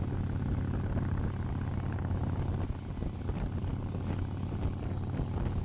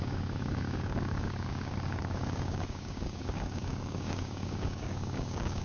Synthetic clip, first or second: second